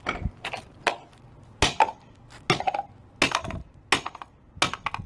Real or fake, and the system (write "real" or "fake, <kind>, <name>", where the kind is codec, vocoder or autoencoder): real